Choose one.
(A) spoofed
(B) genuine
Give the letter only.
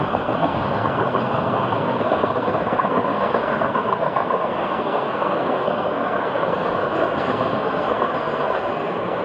A